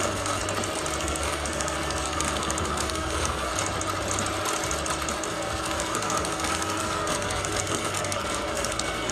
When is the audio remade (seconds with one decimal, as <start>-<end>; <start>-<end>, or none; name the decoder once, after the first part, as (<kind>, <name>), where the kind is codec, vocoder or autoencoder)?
0.0-0.4 (codec, SNAC); 1.0-3.5; 5.3-9.1